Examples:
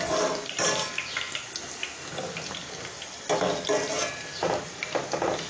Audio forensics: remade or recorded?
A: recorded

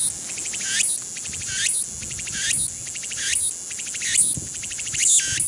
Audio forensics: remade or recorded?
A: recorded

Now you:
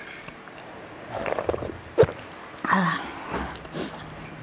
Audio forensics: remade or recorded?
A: recorded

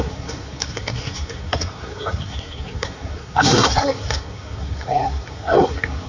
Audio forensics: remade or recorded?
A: remade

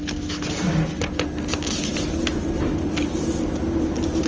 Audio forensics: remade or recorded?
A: recorded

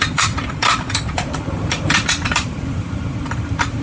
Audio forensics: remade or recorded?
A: remade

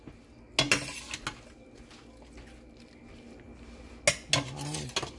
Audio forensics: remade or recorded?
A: recorded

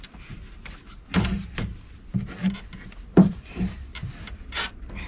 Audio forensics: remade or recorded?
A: recorded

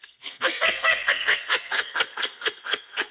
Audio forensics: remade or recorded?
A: remade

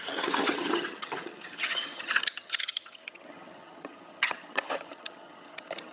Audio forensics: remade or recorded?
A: remade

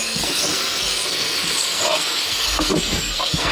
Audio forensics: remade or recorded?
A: remade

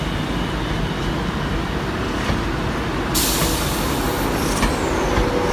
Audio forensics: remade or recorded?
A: recorded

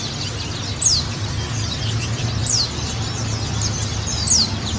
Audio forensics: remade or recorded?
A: recorded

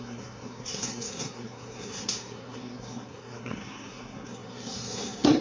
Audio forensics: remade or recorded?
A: remade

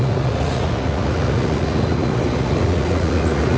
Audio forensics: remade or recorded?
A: remade